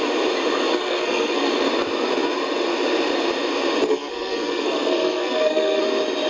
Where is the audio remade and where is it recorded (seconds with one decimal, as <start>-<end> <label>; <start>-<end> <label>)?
0.0-0.7 recorded; 0.7-1.5 remade; 1.5-3.9 recorded; 3.9-5.8 remade; 5.8-6.3 recorded